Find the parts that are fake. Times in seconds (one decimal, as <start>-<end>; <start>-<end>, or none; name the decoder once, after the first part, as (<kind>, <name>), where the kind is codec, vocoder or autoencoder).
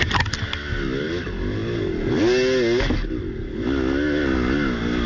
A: none